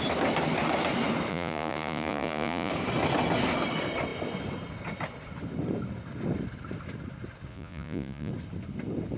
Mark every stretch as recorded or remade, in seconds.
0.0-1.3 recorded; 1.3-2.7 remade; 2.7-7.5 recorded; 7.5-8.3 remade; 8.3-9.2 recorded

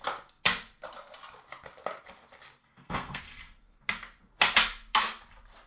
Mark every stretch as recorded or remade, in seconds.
0.0-2.6 recorded; 2.6-3.2 remade; 3.2-5.7 recorded

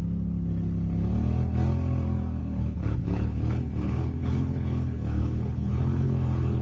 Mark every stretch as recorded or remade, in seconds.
0.0-2.4 recorded; 2.4-6.6 remade